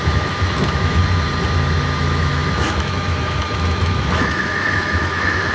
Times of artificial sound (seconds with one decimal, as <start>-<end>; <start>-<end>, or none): 0.0-1.0; 2.0-5.5